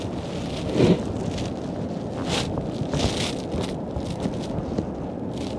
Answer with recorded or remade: recorded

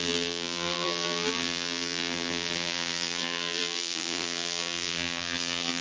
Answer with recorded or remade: remade